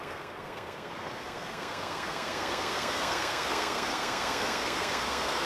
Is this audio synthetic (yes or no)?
yes